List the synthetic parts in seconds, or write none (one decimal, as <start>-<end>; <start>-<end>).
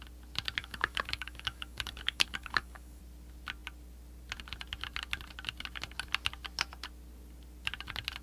0.6-3.0